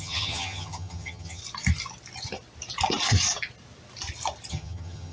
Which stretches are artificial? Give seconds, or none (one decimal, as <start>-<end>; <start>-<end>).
0.0-1.4; 4.5-5.1